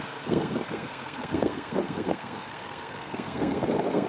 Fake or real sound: fake